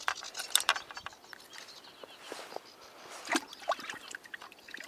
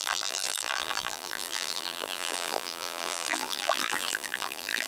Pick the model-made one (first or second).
second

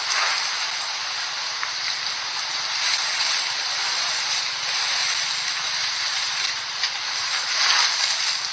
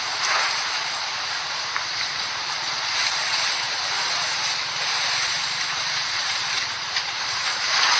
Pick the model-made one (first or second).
second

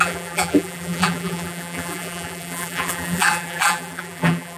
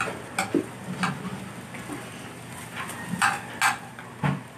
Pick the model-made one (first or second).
first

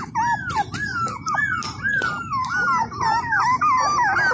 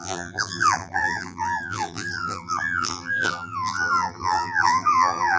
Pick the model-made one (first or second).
second